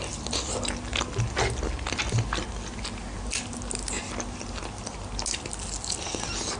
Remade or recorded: recorded